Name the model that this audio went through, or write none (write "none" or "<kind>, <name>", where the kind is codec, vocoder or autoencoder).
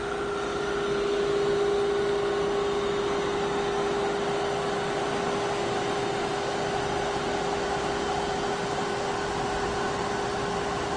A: none